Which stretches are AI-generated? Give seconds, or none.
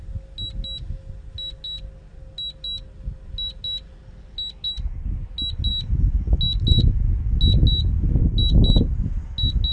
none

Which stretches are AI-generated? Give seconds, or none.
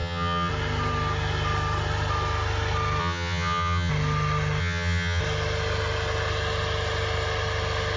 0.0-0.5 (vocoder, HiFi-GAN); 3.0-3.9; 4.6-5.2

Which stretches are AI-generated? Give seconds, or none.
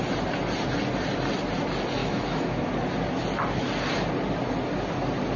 2.0-2.7 (autoencoder, DAC-VAE)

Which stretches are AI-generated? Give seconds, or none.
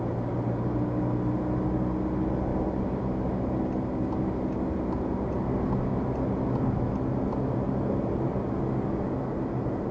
none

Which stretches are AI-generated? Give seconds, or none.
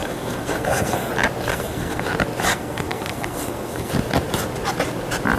0.0-1.1 (codec, SNAC); 1.5-2.0; 2.5-3.9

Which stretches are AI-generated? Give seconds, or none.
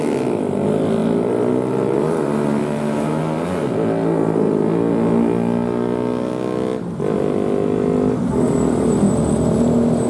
2.6-3.2 (autoencoder, DAC-VAE)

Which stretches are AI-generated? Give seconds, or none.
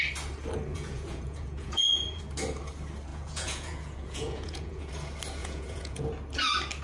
0.7-2.2 (vocoder, Vocos); 3.1-4.9; 5.4-6.1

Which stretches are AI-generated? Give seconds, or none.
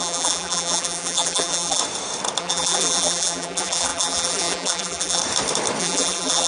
0.0-1.8 (vocoder, BigVGAN v2); 2.4-5.2; 5.8-6.5